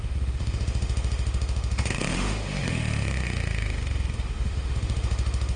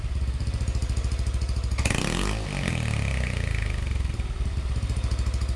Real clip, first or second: second